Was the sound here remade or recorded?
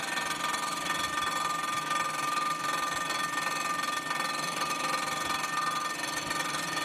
recorded